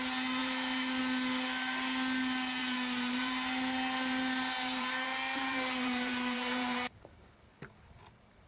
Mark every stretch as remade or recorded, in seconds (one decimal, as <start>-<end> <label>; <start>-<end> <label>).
0.0-0.4 recorded; 0.4-1.0 remade; 1.0-2.6 recorded; 2.6-7.3 remade; 7.3-8.5 recorded